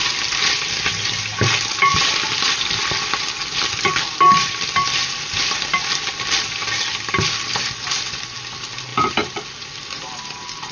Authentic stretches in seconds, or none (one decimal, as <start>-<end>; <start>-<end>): 0.0-1.9; 2.8-3.4; 7.4-8.9; 10.1-10.7